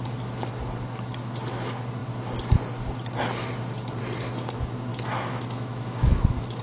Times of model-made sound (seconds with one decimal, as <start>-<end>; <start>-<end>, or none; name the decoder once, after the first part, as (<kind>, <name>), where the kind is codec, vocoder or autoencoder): 4.9-6.6 (autoencoder, DAC-VAE)